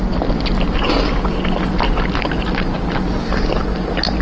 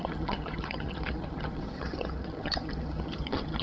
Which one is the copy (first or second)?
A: second